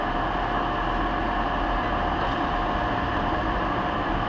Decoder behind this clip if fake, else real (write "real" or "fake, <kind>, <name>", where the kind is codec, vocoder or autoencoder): real